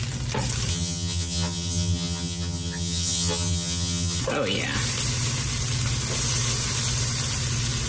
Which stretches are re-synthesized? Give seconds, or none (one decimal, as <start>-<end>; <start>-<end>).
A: 0.7-4.2